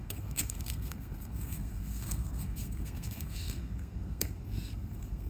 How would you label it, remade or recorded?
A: remade